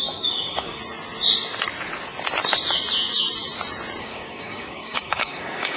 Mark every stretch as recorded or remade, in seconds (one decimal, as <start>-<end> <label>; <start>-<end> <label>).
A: 0.0-0.8 remade; 0.8-4.0 recorded; 4.0-5.8 remade